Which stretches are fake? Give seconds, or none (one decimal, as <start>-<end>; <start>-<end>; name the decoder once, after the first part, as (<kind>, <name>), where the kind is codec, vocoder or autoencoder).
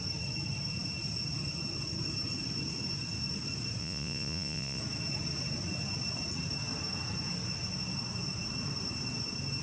3.8-4.8 (vocoder, Vocos)